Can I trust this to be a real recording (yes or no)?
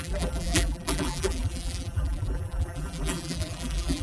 no